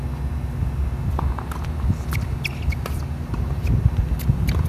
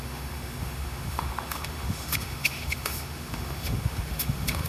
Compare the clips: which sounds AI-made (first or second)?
second